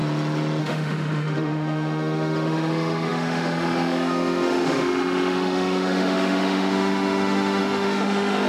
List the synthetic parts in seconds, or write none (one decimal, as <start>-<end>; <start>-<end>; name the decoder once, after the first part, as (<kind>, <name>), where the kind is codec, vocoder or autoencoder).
0.6-8.5 (autoencoder, DAC-VAE)